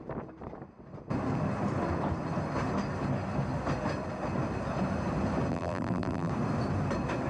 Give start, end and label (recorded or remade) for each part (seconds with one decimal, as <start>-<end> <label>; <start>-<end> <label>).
0.0-5.5 recorded; 5.5-6.3 remade; 6.3-7.3 recorded